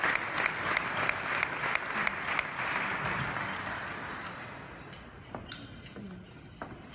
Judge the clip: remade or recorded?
recorded